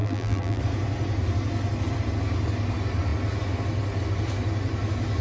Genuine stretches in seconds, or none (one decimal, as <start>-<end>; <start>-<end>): 0.6-5.2